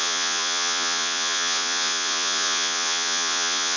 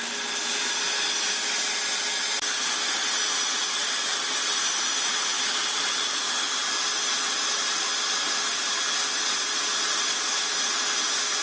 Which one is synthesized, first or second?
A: first